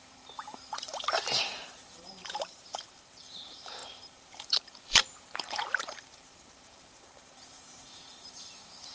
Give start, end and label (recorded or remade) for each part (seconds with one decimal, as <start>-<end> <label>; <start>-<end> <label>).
0.0-8.9 remade